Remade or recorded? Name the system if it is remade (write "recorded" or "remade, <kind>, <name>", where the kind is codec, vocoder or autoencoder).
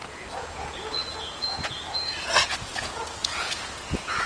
remade, vocoder, Vocos